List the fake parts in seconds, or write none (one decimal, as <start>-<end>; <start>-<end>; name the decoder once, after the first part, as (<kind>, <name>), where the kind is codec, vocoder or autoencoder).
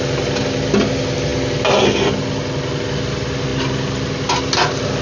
none